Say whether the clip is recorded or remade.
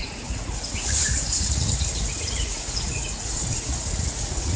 remade